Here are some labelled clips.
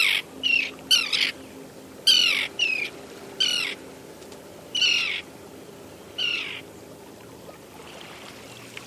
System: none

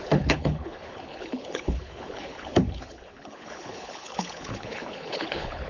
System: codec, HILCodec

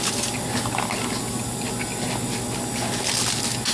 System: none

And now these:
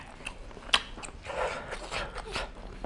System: none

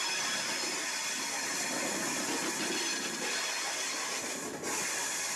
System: none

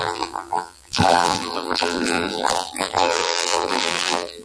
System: vocoder, BigVGAN v2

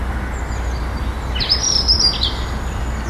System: none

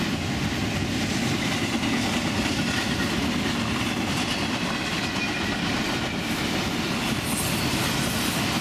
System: none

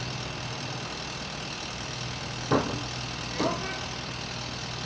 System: none